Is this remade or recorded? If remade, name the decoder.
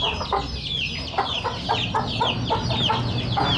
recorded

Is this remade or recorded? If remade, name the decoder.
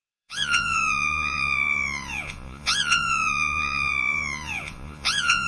remade, vocoder, Vocos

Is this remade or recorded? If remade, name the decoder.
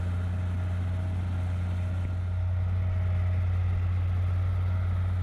recorded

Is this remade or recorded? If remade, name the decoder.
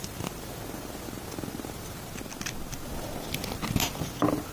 recorded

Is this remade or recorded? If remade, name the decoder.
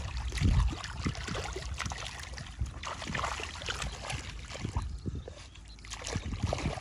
recorded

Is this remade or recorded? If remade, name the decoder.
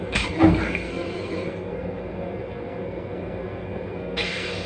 remade, codec, SNAC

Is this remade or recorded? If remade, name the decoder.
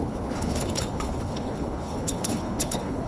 remade, codec, HILCodec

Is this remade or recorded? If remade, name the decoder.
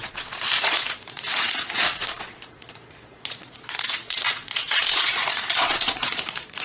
remade, vocoder, Vocos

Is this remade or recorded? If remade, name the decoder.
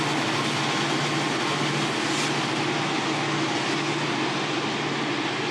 recorded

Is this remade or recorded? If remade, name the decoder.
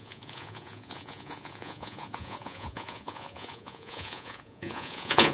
remade, vocoder, Vocos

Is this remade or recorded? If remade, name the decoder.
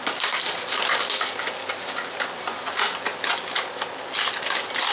recorded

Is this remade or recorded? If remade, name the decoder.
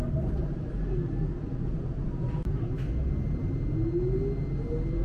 recorded